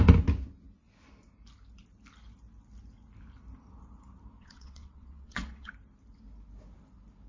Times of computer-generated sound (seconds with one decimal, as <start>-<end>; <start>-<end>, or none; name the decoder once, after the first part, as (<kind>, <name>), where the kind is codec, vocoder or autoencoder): 4.4-5.7 (vocoder, WaveNeXt)